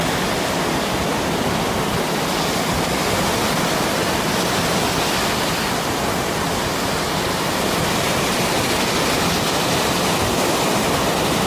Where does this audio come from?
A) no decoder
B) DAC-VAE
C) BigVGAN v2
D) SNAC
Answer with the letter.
A